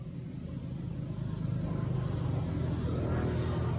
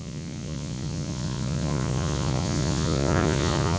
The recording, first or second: first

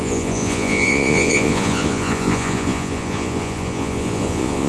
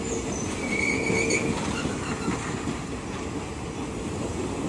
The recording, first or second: second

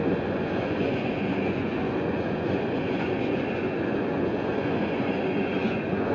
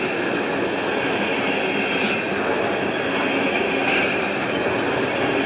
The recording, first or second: second